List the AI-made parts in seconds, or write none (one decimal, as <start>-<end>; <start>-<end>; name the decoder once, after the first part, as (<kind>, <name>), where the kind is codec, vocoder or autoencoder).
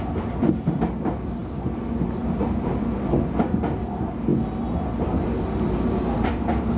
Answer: none